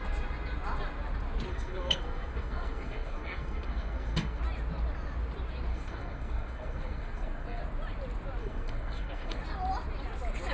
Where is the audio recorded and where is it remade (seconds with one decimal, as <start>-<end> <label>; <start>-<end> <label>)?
0.0-1.5 recorded; 1.5-4.4 remade; 4.4-5.7 recorded; 5.7-7.6 remade; 7.6-8.4 recorded; 8.4-9.4 remade; 9.4-10.5 recorded